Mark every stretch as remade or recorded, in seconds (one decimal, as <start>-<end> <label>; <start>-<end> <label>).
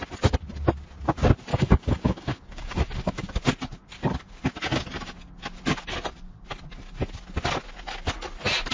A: 0.0-1.5 recorded; 1.5-3.3 remade; 3.3-8.7 recorded